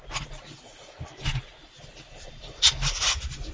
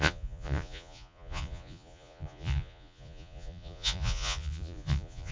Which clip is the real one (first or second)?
first